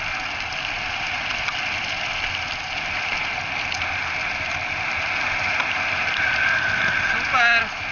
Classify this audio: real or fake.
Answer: real